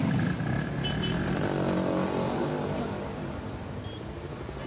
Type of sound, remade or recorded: remade